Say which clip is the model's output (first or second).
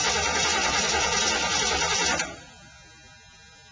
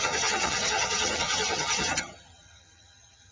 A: second